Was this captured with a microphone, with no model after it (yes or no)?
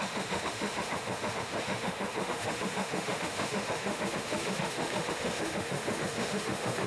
no